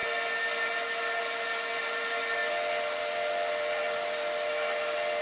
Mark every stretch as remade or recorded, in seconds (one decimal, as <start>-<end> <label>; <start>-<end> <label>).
0.0-5.2 recorded